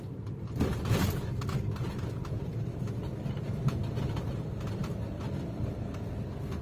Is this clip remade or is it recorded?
recorded